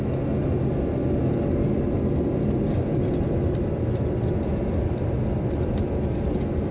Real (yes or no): yes